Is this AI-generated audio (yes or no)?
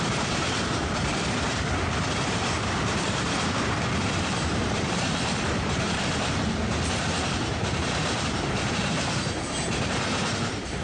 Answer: yes